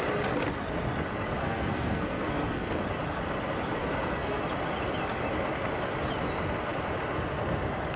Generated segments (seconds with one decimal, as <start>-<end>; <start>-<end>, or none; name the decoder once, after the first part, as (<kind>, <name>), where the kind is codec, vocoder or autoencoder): 1.4-2.7 (codec, SNAC); 3.8-4.4